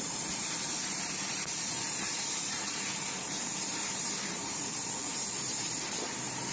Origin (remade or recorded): remade